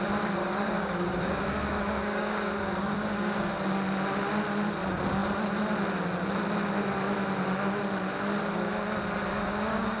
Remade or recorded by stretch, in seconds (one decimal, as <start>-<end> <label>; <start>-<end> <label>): 0.0-0.4 recorded; 0.4-3.5 remade; 3.5-9.3 recorded; 9.3-10.0 remade